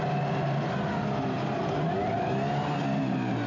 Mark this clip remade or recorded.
recorded